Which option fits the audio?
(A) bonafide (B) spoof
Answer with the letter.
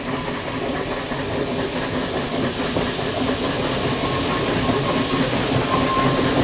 A